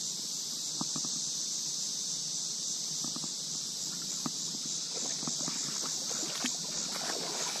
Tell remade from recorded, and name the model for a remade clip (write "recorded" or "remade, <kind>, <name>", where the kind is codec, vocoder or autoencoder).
recorded